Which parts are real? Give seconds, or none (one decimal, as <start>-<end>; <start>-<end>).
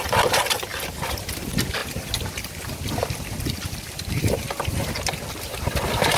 0.0-6.2